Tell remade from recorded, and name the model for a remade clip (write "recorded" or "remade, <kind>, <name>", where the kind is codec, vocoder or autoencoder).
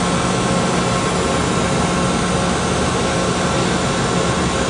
recorded